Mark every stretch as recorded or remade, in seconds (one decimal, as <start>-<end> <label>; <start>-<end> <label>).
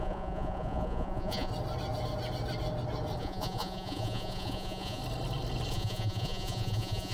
0.0-1.5 remade; 1.5-3.2 recorded; 3.2-5.0 remade; 5.0-5.7 recorded; 5.7-7.1 remade